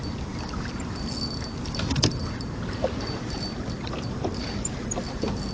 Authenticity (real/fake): real